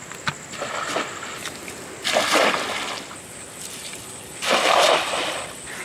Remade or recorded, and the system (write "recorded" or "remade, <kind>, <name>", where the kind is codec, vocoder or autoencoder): recorded